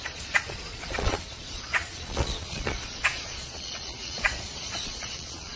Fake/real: fake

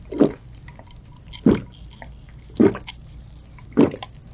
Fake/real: real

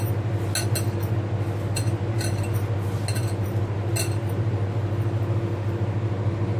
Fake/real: real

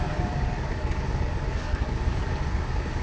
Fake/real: fake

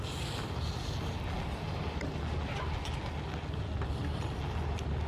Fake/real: real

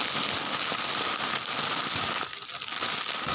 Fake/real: real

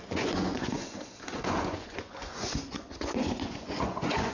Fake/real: fake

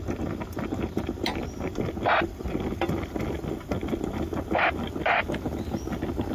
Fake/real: real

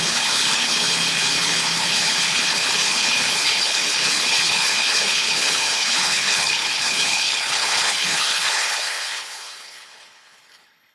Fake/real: fake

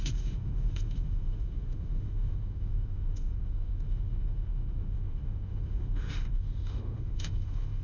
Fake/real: fake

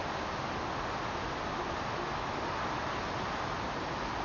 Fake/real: real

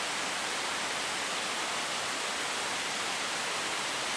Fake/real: real